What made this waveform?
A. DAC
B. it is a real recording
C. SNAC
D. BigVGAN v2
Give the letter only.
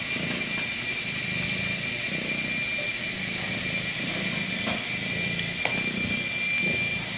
B